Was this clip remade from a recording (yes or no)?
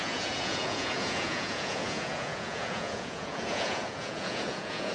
yes